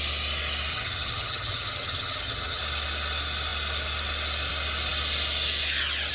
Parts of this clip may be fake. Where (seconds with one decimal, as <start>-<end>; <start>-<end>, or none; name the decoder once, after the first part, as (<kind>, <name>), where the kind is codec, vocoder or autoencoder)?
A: 0.7-2.6 (vocoder, HiFi-GAN)